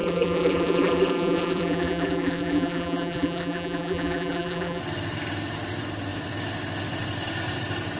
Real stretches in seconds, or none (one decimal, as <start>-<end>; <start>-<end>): 4.8-8.0